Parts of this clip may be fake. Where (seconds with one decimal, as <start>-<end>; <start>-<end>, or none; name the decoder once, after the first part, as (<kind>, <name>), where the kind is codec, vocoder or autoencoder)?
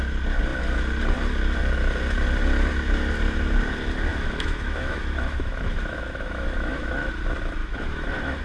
4.1-7.1 (autoencoder, DAC-VAE); 7.6-8.4